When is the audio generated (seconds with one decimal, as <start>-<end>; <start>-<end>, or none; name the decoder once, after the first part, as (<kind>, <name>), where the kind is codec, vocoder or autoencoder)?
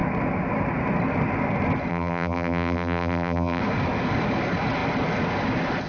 1.9-3.6 (vocoder, BigVGAN v2)